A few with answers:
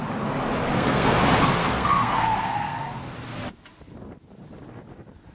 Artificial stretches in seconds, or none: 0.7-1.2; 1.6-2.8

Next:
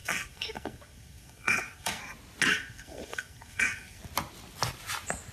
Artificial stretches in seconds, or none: 0.0-2.0; 2.5-4.0